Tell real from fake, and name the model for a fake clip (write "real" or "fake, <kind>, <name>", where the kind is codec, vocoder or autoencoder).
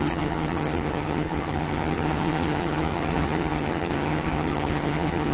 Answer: fake, vocoder, HiFi-GAN